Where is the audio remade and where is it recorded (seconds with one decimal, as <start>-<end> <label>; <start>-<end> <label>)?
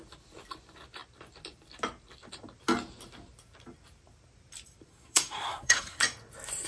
0.0-4.9 recorded; 4.9-6.0 remade; 6.0-6.7 recorded